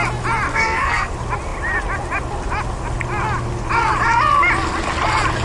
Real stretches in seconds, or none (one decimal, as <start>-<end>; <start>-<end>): 0.0-0.5; 1.1-5.4

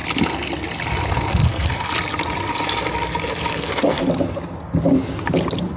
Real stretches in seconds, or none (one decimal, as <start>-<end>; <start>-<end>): 0.0-1.3; 1.9-3.5; 4.1-5.8

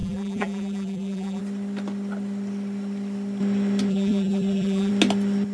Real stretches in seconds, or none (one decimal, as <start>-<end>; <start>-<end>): 1.4-3.9; 4.9-5.5

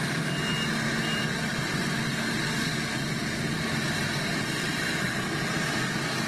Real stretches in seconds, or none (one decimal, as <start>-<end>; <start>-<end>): 0.0-1.5; 5.3-6.3

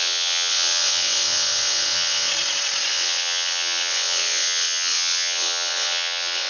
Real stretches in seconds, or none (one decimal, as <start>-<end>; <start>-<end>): 2.3-2.9

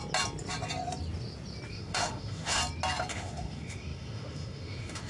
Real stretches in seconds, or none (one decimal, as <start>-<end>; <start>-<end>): 0.0-1.7; 2.6-3.1